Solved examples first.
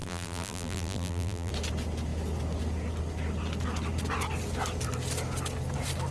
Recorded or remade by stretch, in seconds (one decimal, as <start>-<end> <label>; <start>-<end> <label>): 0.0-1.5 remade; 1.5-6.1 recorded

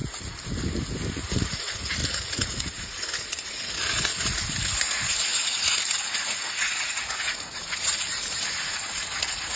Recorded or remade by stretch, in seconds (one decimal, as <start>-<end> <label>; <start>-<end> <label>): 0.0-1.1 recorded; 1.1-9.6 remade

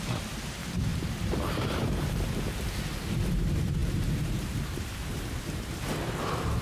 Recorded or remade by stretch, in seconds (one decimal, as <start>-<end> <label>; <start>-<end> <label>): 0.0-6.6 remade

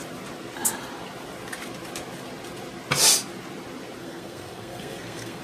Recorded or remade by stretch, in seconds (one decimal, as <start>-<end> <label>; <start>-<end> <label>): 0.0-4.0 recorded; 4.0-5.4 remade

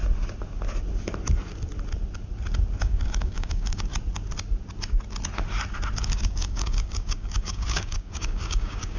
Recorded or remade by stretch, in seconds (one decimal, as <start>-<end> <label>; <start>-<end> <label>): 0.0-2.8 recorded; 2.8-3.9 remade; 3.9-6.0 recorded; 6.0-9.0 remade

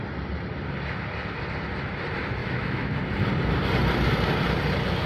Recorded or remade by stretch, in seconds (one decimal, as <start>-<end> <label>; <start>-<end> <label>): 0.0-2.4 recorded; 2.4-2.9 remade; 2.9-5.1 recorded